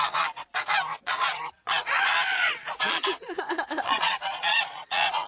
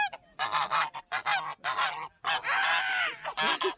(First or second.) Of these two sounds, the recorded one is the second